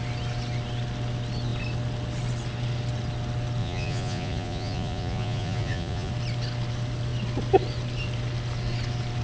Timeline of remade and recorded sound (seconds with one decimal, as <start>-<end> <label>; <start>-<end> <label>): 0.0-3.6 recorded; 3.6-6.1 remade; 6.1-9.2 recorded